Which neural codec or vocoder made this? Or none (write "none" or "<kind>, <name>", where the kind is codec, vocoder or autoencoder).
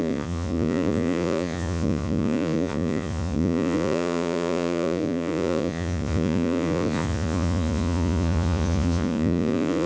vocoder, Vocos